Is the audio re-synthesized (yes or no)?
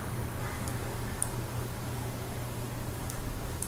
yes